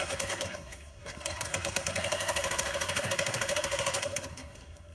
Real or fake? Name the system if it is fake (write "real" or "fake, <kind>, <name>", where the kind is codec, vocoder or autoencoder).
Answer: fake, codec, SNAC